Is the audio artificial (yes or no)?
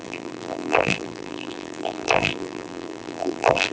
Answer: yes